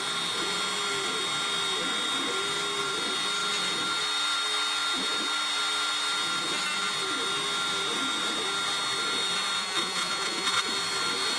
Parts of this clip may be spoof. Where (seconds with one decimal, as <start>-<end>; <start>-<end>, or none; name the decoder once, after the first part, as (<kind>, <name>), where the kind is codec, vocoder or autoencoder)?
9.6-10.7 (vocoder, Vocos)